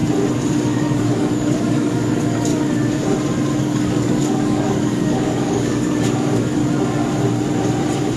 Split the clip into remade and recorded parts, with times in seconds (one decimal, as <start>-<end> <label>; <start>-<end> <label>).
0.0-0.6 recorded; 0.6-2.5 remade; 2.5-3.6 recorded; 3.6-6.6 remade; 6.6-8.2 recorded